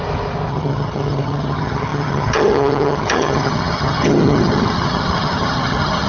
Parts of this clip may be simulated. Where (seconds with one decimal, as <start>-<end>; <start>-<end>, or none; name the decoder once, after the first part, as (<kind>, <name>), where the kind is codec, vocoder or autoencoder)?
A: 0.5-6.1 (vocoder, HiFi-GAN)